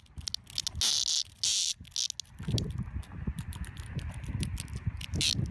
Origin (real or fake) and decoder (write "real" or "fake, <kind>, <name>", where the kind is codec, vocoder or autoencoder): real